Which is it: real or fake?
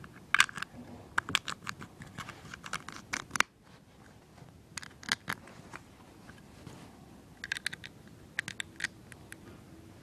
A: real